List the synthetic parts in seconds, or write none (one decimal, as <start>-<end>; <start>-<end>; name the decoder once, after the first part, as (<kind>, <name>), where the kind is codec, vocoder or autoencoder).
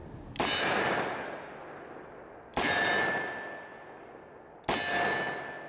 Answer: 2.5-4.1 (vocoder, BigVGAN v2)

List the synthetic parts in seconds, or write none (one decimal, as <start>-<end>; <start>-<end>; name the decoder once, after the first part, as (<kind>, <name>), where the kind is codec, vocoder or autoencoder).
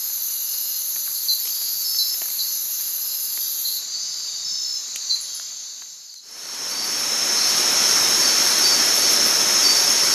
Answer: 1.5-2.9 (vocoder, BigVGAN v2); 4.8-6.5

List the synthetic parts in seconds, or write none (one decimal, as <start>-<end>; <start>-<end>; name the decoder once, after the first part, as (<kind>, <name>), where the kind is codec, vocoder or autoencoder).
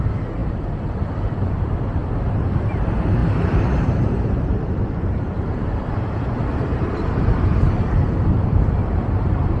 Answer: 0.0-9.6 (vocoder, BigVGAN v2)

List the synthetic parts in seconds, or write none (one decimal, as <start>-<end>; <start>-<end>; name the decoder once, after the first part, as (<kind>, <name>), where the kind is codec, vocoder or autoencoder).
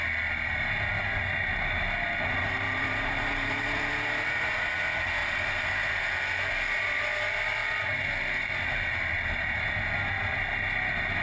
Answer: 2.4-3.6 (vocoder, BigVGAN v2); 5.2-5.9; 7.6-9.4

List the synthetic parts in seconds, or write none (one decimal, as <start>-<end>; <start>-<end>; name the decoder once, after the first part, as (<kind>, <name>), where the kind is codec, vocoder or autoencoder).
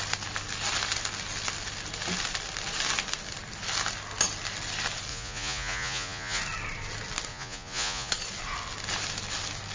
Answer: 5.1-6.4 (vocoder, Vocos); 7.3-8.1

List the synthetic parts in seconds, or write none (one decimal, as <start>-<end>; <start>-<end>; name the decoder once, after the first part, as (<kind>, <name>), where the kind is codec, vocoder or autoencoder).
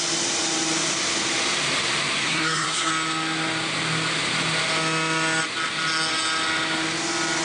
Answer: 2.2-2.9 (codec, SNAC)